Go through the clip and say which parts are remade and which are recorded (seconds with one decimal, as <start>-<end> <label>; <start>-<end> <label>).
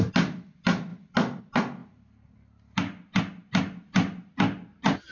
0.0-5.1 recorded